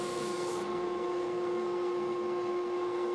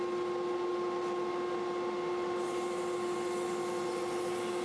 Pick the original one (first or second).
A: second